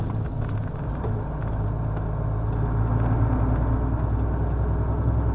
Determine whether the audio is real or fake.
real